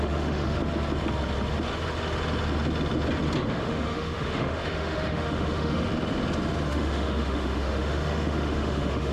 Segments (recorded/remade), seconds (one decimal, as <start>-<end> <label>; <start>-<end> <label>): 0.0-0.6 remade; 0.6-3.5 recorded; 3.5-5.9 remade; 5.9-6.7 recorded; 6.7-9.1 remade